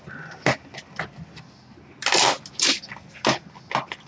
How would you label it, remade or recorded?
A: recorded